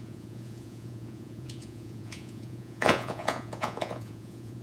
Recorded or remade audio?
remade